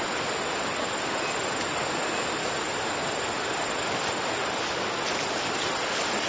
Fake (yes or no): no